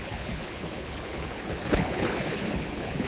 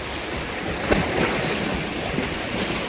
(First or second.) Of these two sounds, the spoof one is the first